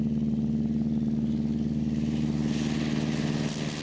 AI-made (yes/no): no